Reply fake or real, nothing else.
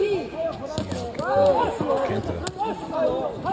real